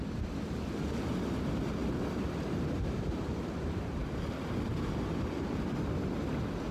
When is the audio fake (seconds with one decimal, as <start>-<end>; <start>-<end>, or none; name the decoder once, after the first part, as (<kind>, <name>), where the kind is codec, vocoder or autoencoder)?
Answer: none

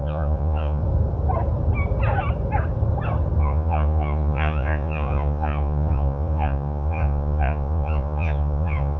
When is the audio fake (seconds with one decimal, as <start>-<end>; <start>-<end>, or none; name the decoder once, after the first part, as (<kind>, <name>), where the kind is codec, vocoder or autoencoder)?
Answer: 0.0-0.8 (vocoder, Vocos); 3.4-9.0